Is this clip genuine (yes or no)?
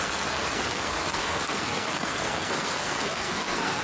no